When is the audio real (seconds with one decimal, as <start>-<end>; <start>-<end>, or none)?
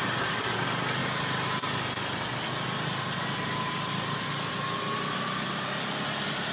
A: 0.0-1.0; 4.5-6.5